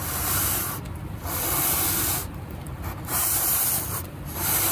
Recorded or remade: remade